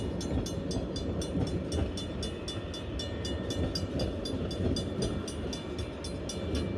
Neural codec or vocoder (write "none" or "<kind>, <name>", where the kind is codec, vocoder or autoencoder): none